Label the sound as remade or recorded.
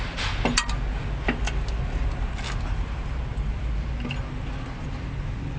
recorded